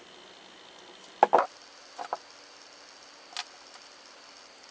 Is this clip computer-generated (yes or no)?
no